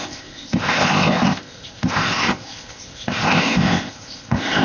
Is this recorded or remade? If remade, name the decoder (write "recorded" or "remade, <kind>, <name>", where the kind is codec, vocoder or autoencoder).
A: remade, codec, ZipCodec